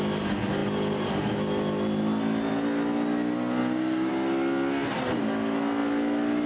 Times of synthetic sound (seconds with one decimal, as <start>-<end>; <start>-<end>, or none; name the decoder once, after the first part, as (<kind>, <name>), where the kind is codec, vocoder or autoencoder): 3.6-4.1 (codec, DAC)

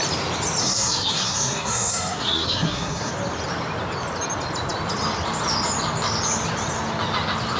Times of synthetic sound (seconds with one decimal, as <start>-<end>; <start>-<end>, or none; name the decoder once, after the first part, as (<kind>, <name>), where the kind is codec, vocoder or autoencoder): 0.6-3.1 (codec, SNAC)

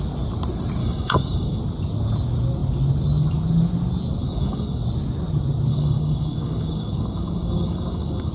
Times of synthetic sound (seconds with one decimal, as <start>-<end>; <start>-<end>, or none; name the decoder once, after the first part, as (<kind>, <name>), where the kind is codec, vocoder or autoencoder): 0.8-1.6 (codec, DAC); 4.2-4.8; 5.7-8.3

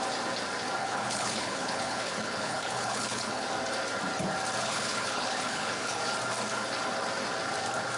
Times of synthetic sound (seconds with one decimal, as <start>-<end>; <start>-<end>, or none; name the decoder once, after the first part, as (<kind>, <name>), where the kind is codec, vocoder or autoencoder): 0.8-3.5 (codec, HILCodec); 4.6-6.0

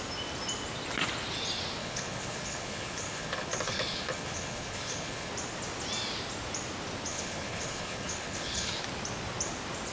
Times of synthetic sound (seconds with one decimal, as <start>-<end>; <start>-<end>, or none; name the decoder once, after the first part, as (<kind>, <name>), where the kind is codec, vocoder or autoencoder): 1.8-5.3 (codec, HILCodec); 7.1-8.8

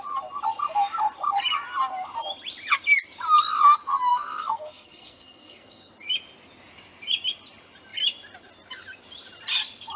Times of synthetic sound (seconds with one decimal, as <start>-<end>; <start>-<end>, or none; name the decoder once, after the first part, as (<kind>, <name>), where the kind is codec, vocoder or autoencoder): 4.1-5.9 (codec, SNAC)